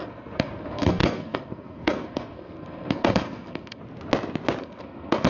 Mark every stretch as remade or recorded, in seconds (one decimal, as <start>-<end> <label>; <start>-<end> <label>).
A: 0.0-3.8 remade; 3.8-4.6 recorded; 4.6-5.3 remade